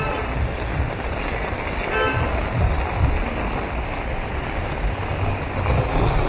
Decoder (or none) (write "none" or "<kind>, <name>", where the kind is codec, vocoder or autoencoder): none